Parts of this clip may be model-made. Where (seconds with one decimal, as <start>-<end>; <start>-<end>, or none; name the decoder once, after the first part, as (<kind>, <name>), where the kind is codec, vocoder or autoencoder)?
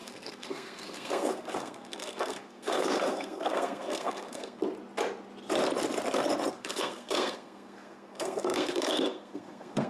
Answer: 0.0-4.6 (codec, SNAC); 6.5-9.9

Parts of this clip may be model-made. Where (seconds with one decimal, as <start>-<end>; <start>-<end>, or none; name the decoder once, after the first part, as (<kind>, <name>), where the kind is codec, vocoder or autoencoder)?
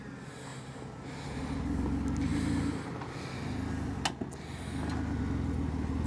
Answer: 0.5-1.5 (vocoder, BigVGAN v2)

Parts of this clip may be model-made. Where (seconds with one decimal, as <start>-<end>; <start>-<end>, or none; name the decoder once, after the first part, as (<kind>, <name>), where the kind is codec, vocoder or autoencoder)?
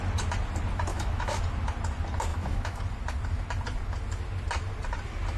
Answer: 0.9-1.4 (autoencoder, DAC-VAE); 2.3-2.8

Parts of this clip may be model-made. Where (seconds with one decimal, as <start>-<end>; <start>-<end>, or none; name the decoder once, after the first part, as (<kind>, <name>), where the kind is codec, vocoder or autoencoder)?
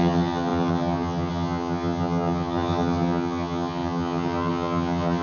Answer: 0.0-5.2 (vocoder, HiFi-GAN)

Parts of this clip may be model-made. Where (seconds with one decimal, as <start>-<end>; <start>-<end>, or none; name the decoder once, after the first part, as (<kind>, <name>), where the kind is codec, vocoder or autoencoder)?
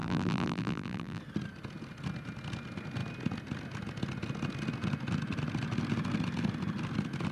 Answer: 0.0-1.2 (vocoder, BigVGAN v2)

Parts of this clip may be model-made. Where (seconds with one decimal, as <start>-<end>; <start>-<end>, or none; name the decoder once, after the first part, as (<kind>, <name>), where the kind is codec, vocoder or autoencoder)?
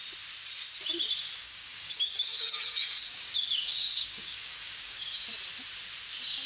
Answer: 1.4-5.3 (codec, DAC)